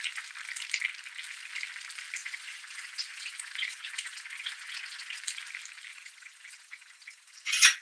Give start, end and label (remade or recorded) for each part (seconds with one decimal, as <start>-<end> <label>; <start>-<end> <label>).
0.0-2.2 recorded; 2.2-5.2 remade; 5.2-5.9 recorded; 5.9-7.8 remade

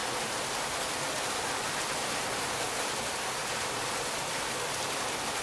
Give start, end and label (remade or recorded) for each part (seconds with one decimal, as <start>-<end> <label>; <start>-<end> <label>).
0.0-5.4 recorded